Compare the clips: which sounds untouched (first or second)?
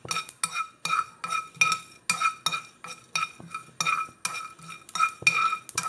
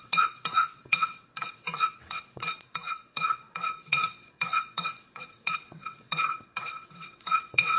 first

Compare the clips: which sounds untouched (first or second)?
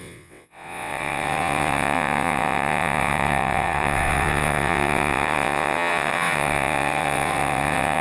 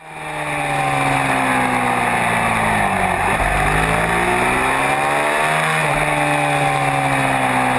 second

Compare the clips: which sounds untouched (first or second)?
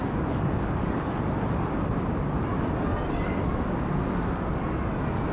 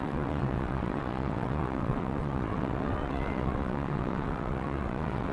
first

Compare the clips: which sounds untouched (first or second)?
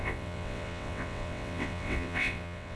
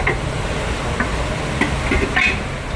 second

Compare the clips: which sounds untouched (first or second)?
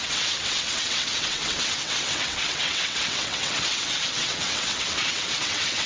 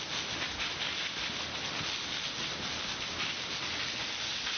second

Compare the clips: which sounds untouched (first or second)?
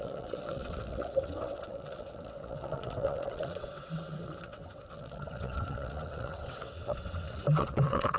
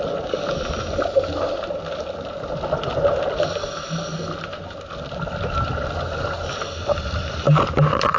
second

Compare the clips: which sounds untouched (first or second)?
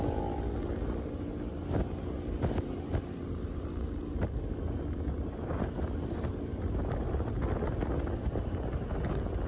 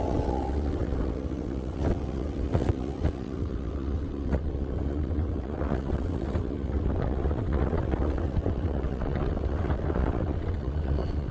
first